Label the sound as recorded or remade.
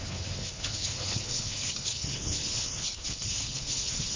remade